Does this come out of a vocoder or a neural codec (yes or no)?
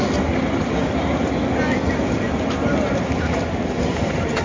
no